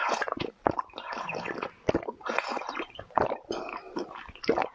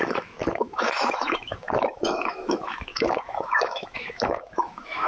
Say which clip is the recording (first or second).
first